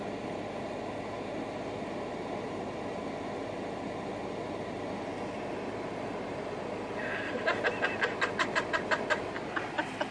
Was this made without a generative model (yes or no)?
yes